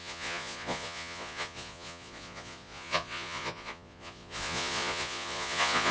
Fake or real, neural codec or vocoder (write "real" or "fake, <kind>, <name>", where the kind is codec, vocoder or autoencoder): fake, vocoder, Vocos